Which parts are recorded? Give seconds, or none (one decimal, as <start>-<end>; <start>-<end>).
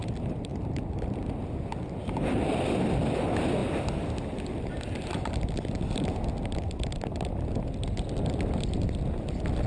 0.0-9.7